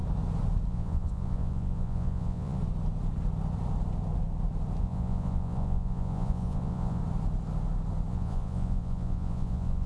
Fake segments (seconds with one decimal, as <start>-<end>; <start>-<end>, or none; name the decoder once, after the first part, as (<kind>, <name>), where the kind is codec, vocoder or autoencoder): 0.7-2.6 (vocoder, Vocos); 4.8-7.0; 8.1-9.9